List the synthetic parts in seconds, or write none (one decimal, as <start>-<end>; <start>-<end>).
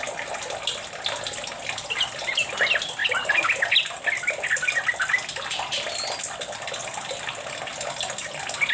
none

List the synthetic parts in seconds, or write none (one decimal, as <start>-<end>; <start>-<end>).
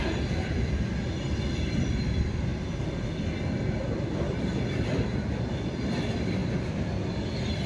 0.0-2.5; 4.0-7.7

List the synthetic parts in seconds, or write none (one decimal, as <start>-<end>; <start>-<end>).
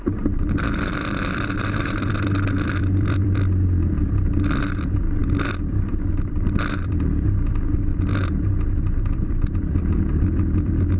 0.0-7.9; 8.8-11.0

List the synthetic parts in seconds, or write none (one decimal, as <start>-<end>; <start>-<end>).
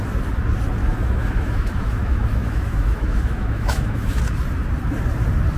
0.8-4.2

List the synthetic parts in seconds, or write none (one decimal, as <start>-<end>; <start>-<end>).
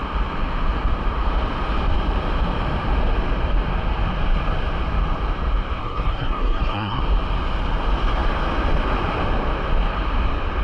5.8-7.0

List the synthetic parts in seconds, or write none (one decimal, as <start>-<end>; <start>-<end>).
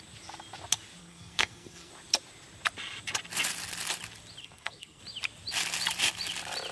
1.0-1.9; 4.4-5.0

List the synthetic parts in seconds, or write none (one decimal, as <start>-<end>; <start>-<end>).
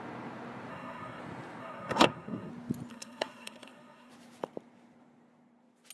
0.7-1.2; 1.6-2.5; 2.9-4.1